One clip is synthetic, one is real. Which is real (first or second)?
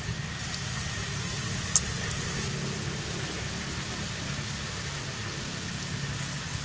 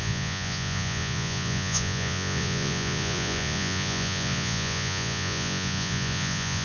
first